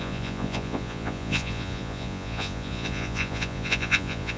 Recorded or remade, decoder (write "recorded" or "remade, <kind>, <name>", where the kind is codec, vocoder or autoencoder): remade, vocoder, Vocos